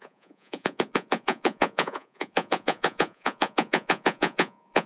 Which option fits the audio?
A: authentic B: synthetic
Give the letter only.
B